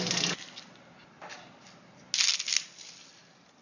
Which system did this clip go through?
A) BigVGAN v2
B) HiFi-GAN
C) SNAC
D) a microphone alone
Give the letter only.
D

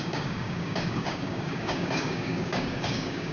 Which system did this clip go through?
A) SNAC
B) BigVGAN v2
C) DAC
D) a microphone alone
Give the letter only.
C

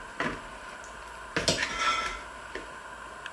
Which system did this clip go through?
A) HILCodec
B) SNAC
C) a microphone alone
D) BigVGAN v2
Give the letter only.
C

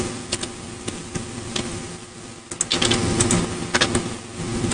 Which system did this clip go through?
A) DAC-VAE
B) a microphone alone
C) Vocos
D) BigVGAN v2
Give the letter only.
B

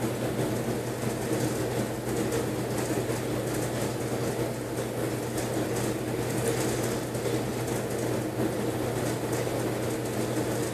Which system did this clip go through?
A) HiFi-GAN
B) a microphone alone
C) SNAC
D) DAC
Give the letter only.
B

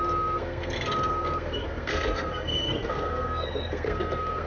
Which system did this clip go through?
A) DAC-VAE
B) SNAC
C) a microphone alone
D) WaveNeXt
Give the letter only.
B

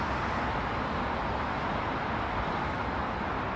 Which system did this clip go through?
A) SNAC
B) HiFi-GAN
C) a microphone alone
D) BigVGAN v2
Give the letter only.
C